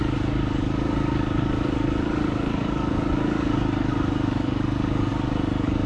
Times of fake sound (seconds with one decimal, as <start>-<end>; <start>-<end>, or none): 0.0-5.9